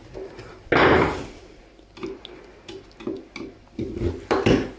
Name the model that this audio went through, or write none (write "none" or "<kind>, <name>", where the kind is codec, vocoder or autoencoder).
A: none